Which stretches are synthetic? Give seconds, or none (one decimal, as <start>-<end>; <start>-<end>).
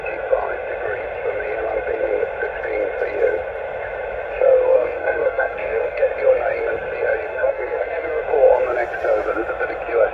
4.7-6.0; 7.3-8.2